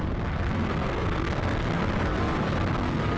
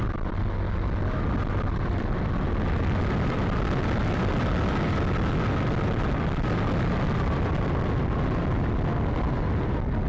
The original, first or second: second